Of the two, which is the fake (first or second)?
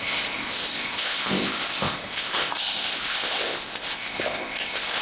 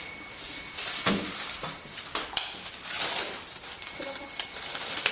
first